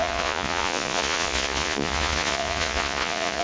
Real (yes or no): no